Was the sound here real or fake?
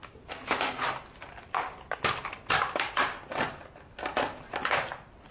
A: real